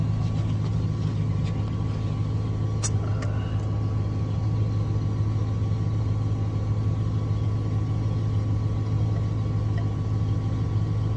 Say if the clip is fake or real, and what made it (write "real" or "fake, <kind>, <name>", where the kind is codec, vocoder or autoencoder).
real